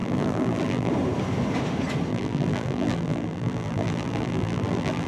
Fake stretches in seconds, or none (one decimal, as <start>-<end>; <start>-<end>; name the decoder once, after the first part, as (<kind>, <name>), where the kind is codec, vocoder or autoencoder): 0.0-0.9 (vocoder, BigVGAN v2); 2.1-5.1